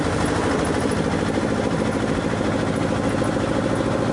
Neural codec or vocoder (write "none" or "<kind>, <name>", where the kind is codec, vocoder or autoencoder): none